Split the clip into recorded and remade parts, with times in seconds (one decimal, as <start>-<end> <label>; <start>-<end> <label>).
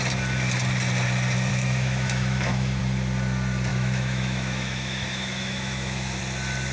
0.0-1.5 recorded; 1.5-2.8 remade; 2.8-3.7 recorded; 3.7-6.2 remade; 6.2-6.7 recorded